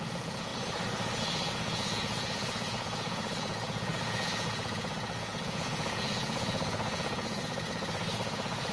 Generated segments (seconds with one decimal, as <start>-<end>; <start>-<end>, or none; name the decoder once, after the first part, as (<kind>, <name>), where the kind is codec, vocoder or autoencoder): 0.0-0.5 (vocoder, Vocos); 1.2-8.7